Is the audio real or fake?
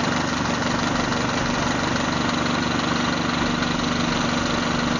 real